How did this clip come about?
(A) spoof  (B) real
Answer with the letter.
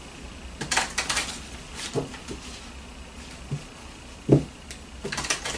B